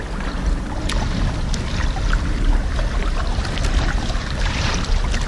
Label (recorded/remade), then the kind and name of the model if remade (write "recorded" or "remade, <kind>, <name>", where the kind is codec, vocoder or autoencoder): recorded